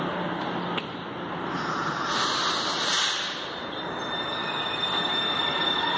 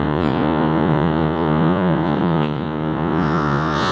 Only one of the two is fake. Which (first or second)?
second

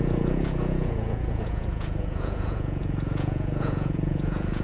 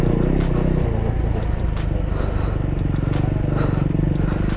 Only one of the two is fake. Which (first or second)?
first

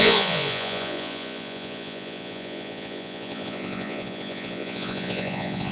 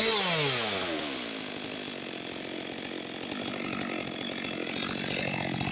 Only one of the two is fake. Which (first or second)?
first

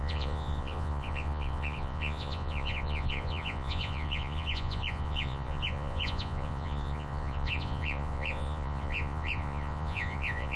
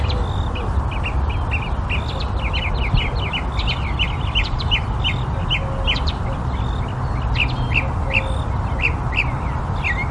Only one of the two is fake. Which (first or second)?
first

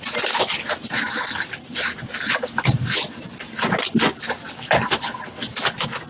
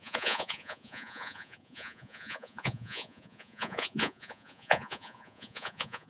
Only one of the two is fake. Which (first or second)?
second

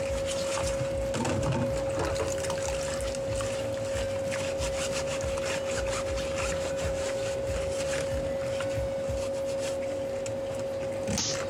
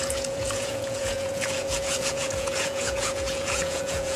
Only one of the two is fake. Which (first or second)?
second